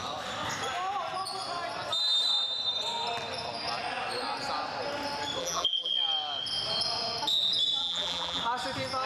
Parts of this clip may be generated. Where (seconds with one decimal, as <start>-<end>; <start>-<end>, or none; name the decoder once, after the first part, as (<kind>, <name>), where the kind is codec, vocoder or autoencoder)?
5.4-5.9 (vocoder, BigVGAN v2); 7.8-8.4